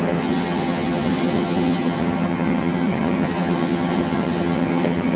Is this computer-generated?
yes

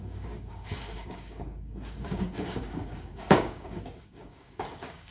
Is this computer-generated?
yes